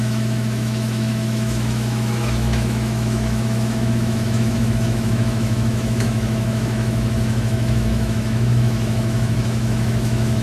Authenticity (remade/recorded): remade